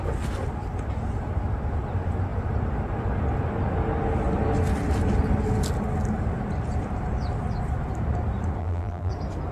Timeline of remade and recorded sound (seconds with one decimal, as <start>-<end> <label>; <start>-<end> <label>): 0.0-8.6 recorded; 8.6-9.1 remade; 9.1-9.5 recorded